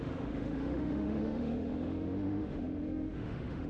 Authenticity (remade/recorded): remade